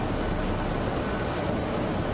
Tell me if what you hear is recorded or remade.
recorded